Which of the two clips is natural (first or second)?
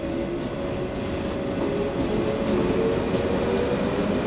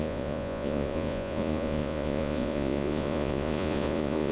first